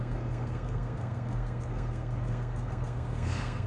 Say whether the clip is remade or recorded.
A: remade